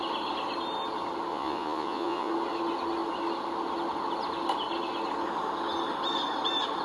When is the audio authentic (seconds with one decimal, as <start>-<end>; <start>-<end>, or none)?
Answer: 0.0-1.3; 2.3-6.8